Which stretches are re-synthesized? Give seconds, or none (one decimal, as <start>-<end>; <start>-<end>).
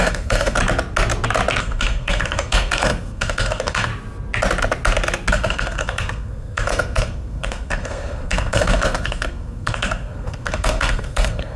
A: 0.0-0.6; 1.6-3.9; 5.3-11.6